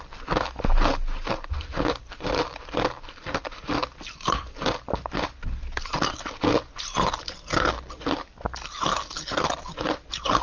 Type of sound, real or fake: real